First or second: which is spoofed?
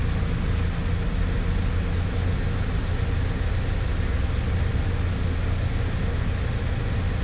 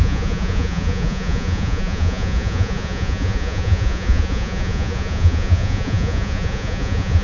second